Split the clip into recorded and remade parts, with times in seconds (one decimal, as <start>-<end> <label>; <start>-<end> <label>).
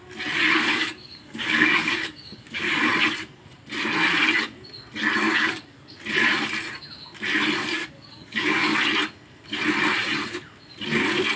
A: 0.0-0.7 recorded; 0.7-2.7 remade; 2.7-5.3 recorded; 5.3-6.1 remade; 6.1-7.7 recorded; 7.7-8.8 remade; 8.8-11.4 recorded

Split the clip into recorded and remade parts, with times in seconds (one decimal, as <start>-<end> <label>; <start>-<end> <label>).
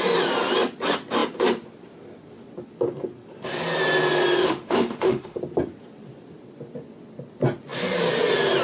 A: 0.0-4.4 recorded; 4.4-5.4 remade; 5.4-8.6 recorded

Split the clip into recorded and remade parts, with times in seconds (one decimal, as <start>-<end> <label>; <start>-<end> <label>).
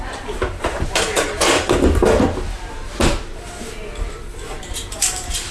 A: 0.0-2.0 remade; 2.0-4.6 recorded; 4.6-5.5 remade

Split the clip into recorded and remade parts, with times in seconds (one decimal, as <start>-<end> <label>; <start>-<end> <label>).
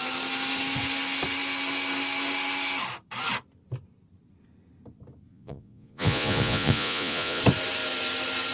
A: 0.0-5.3 recorded; 5.3-7.4 remade; 7.4-8.5 recorded